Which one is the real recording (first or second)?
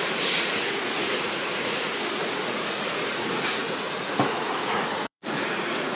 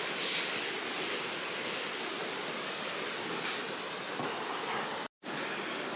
second